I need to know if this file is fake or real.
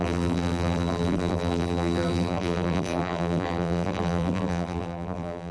fake